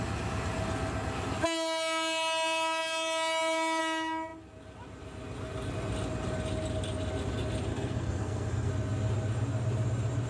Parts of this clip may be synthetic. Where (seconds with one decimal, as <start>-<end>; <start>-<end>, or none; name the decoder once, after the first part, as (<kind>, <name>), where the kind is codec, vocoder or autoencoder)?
7.7-8.7 (codec, SNAC)